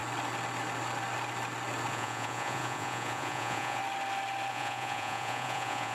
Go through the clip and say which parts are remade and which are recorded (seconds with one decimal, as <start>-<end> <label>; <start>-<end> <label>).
0.0-1.9 recorded; 1.9-3.8 remade; 3.8-4.5 recorded; 4.5-5.9 remade